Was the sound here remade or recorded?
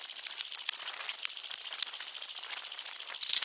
recorded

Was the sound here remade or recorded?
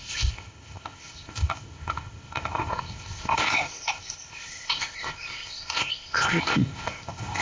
remade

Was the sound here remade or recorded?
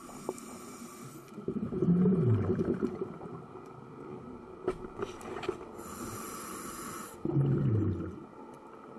recorded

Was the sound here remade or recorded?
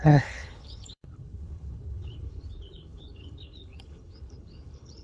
remade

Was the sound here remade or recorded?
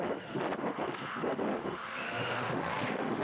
remade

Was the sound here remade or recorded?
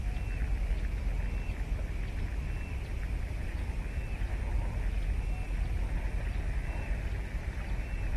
recorded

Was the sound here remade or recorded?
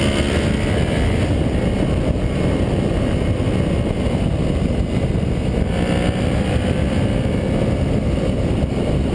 remade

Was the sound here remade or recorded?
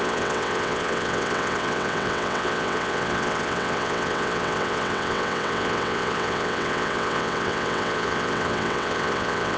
remade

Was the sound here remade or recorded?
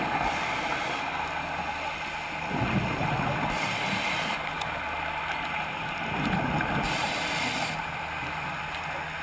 recorded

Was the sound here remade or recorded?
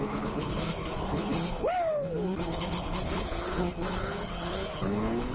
remade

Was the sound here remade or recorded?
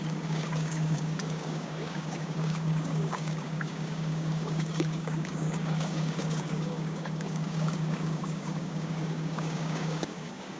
remade